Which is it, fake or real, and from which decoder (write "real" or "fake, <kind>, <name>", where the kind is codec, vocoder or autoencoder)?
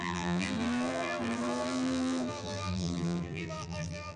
fake, vocoder, BigVGAN v2